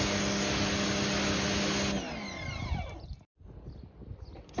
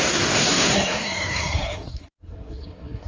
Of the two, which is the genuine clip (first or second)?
first